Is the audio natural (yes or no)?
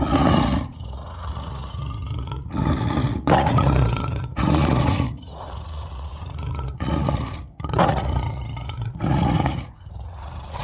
no